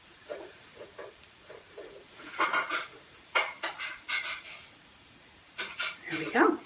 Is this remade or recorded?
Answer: remade